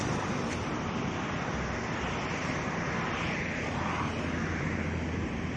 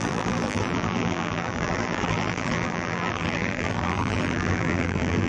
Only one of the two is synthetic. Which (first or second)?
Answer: second